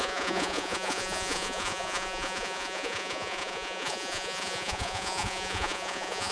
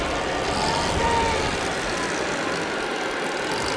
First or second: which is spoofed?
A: first